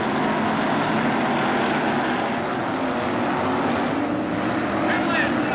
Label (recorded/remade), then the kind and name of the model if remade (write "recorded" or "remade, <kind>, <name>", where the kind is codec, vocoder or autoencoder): recorded